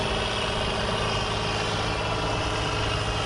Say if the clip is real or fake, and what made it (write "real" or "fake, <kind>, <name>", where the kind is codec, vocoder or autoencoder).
real